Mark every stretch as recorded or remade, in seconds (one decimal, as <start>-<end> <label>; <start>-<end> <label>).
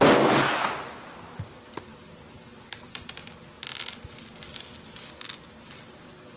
0.0-6.4 recorded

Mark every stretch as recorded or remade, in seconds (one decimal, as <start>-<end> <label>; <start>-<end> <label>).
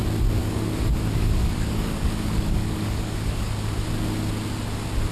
0.0-0.4 recorded; 0.4-3.5 remade; 3.5-5.1 recorded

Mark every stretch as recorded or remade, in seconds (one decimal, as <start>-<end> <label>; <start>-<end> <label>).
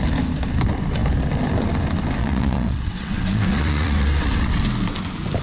0.0-2.2 recorded; 2.2-4.6 remade; 4.6-5.4 recorded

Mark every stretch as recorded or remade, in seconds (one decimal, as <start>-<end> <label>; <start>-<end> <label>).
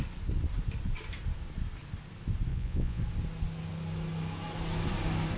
0.0-2.5 recorded; 2.5-3.0 remade; 3.0-5.4 recorded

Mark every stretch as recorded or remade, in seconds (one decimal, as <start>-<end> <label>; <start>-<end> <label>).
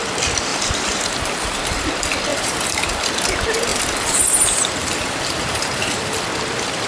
0.0-0.5 recorded; 0.5-1.8 remade; 1.8-2.3 recorded; 2.3-3.0 remade; 3.0-3.7 recorded; 3.7-4.2 remade; 4.2-4.8 recorded; 4.8-6.2 remade; 6.2-6.9 recorded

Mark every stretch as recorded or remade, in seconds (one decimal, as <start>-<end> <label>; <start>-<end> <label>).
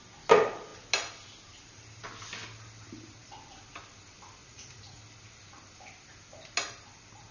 0.0-4.4 recorded; 4.4-5.0 remade; 5.0-7.3 recorded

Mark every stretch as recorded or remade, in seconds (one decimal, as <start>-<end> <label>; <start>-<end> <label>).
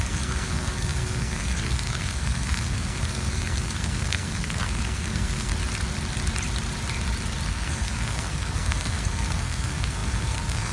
0.0-5.5 remade; 5.5-7.5 recorded; 7.5-10.7 remade